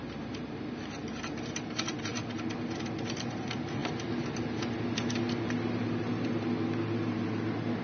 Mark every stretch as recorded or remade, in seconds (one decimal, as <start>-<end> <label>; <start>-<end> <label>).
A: 0.0-7.8 recorded